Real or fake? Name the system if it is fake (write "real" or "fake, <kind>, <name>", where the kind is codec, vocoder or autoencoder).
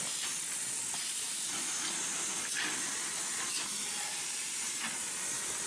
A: real